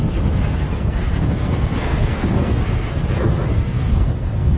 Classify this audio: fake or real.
fake